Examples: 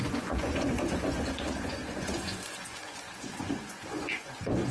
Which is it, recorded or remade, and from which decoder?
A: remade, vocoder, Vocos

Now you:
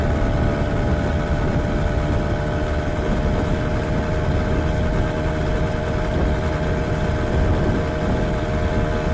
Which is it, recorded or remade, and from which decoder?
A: recorded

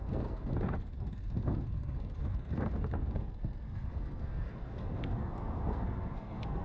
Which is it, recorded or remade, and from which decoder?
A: remade, codec, SNAC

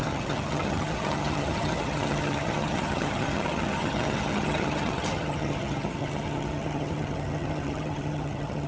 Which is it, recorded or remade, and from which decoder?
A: remade, vocoder, HiFi-GAN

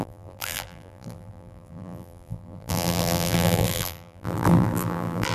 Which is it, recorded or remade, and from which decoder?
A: remade, vocoder, BigVGAN v2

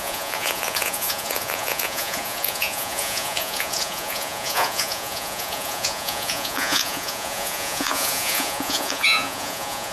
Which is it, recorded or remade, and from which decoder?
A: remade, vocoder, Vocos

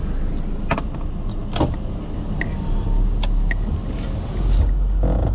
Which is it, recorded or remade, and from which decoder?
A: recorded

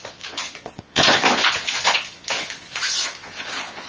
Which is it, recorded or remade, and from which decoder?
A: remade, vocoder, Vocos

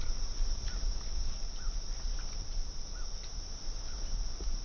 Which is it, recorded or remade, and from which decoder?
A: recorded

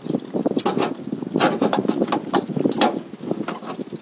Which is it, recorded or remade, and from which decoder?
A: recorded